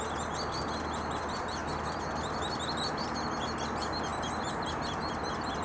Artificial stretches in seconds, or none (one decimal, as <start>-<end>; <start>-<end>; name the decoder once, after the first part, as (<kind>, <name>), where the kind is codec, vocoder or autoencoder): none